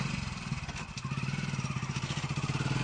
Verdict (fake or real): real